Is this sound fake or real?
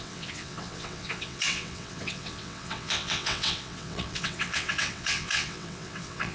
fake